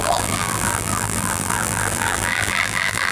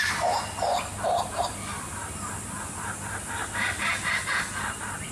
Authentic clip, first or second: second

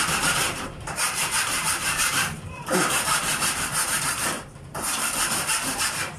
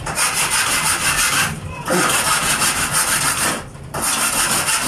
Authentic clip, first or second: second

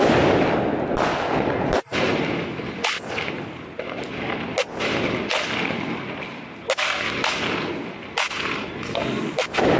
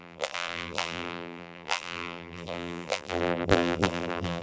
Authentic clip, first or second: first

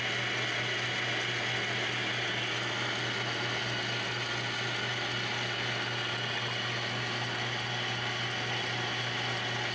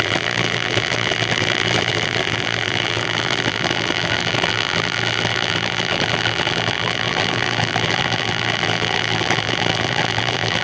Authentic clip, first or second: first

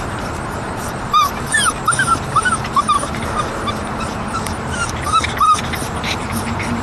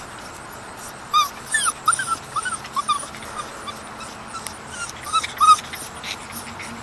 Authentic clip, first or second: second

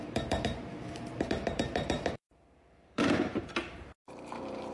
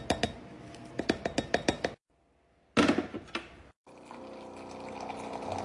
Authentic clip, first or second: second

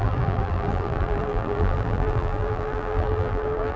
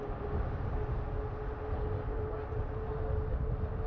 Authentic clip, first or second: second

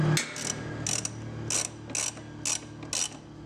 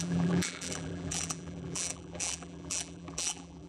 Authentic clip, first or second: first